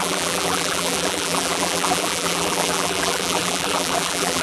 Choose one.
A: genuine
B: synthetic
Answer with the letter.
B